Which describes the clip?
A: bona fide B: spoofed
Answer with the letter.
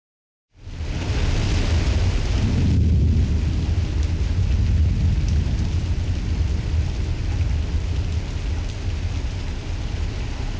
A